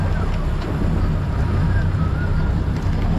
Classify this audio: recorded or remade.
recorded